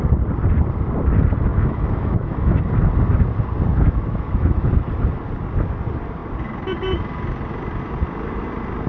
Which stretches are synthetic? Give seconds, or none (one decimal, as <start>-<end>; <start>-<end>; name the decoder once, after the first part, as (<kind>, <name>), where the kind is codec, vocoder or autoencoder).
1.5-2.6 (autoencoder, DAC-VAE); 3.7-4.7